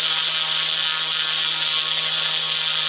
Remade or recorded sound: recorded